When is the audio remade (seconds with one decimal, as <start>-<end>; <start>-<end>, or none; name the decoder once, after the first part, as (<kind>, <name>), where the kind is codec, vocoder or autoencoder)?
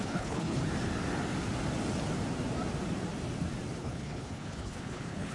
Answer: 0.0-0.6 (codec, HILCodec); 3.8-5.3